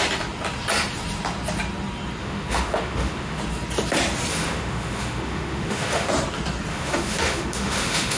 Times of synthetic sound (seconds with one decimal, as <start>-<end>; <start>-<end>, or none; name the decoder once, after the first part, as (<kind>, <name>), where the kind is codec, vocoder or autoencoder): 2.2-3.4 (autoencoder, DAC-VAE); 4.3-6.1; 6.7-8.2